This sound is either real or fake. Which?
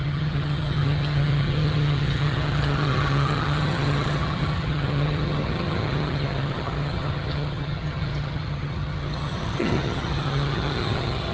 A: fake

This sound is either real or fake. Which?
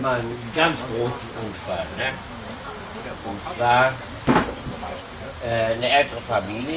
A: real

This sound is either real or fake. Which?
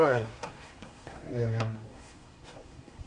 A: fake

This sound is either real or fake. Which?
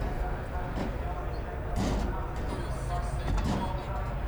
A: real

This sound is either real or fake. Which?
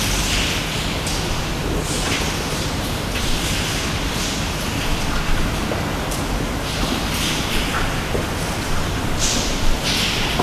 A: real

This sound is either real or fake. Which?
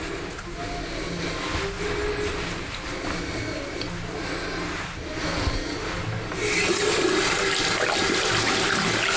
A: real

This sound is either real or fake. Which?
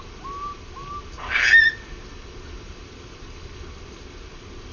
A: real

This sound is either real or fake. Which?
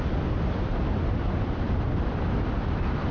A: real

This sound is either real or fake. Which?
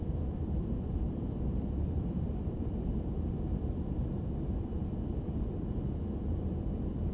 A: fake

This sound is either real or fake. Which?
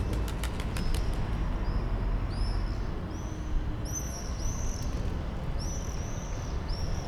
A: real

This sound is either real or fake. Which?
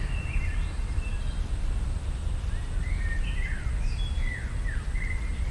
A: real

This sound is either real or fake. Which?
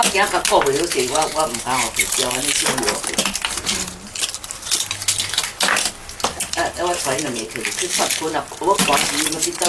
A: real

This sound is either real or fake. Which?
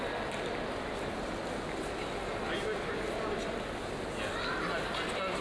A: real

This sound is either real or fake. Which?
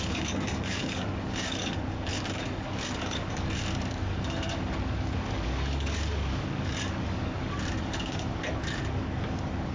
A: fake